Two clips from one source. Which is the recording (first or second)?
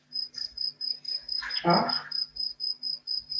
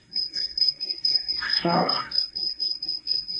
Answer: first